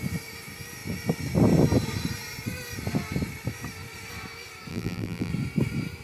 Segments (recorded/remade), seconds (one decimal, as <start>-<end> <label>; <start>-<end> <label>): 0.0-4.7 recorded; 4.7-5.3 remade; 5.3-6.0 recorded